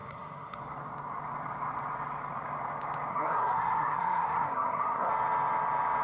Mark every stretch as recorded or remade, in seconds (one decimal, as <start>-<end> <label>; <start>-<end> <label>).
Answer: 0.0-0.6 remade; 0.6-3.1 recorded; 3.1-5.1 remade; 5.1-6.0 recorded